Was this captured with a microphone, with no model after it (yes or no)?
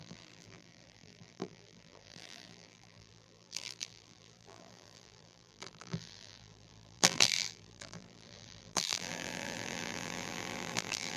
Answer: no